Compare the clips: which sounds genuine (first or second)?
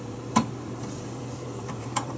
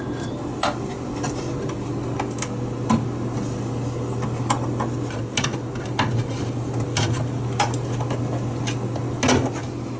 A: second